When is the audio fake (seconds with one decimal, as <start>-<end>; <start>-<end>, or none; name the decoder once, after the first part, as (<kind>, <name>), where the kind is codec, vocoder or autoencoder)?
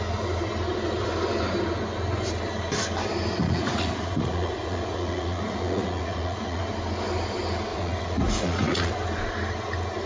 3.4-6.6 (vocoder, Vocos); 7.7-8.9